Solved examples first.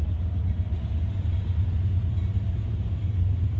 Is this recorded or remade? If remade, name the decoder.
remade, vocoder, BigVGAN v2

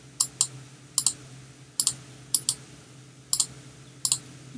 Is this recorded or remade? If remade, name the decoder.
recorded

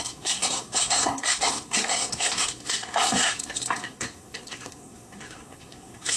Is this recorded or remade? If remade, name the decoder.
remade, codec, SNAC